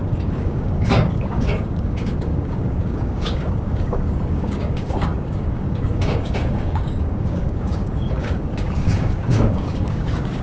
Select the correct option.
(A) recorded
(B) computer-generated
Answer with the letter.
B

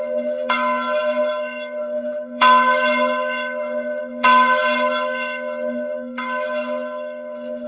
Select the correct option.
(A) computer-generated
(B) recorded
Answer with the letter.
A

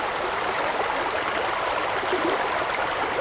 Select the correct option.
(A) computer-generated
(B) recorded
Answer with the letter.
B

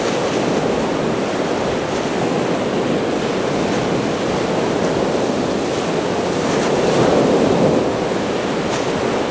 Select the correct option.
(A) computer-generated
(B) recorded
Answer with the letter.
B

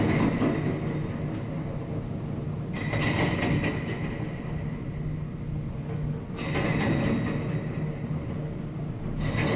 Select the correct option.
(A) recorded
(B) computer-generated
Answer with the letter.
A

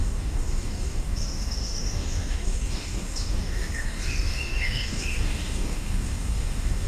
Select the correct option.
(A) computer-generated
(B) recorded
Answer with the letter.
A